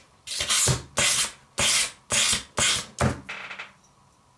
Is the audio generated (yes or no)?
no